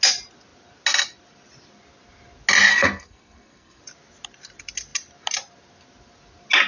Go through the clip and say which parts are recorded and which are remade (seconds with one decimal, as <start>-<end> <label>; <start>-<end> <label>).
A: 0.0-2.7 recorded; 2.7-3.8 remade; 3.8-6.7 recorded